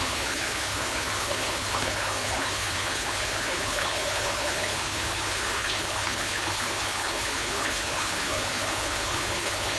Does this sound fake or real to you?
fake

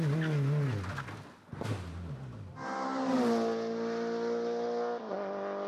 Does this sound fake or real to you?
real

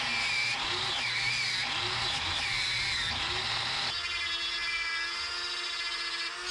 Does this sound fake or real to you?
real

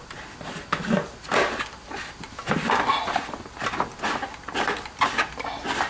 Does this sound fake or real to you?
real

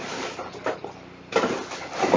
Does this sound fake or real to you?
real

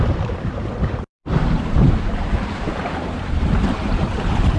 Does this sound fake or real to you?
fake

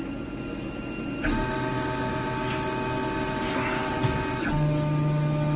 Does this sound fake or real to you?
real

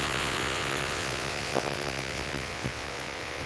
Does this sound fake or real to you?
fake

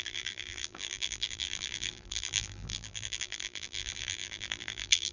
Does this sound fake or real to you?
fake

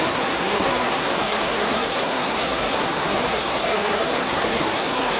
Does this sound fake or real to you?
fake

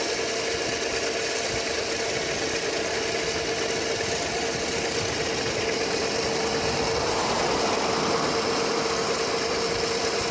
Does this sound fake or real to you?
real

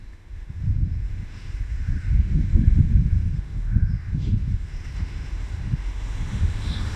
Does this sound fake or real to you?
fake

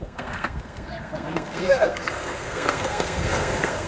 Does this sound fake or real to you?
fake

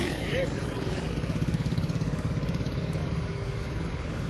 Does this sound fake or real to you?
fake